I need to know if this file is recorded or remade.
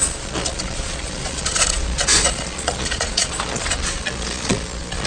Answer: remade